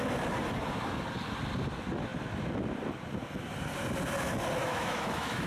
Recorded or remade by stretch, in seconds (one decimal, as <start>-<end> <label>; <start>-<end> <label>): 0.0-4.6 recorded; 4.6-5.5 remade